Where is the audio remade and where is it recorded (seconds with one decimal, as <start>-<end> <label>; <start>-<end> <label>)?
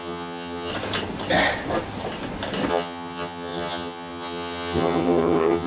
0.0-0.7 remade; 0.7-2.7 recorded; 2.7-5.7 remade